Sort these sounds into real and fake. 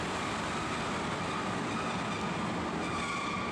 real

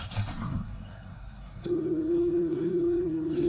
fake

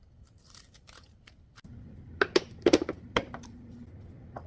real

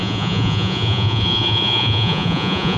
fake